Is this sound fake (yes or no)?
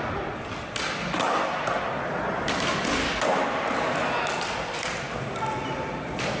no